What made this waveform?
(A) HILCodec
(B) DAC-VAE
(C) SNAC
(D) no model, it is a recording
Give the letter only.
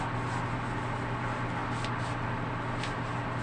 D